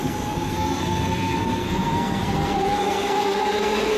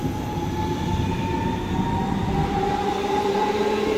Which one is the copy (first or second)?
first